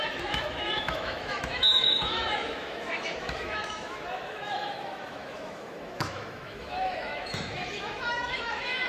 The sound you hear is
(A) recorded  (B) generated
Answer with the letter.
B